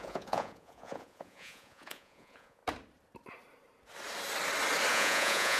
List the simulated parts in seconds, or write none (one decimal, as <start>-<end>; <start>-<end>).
0.0-2.6; 4.9-5.6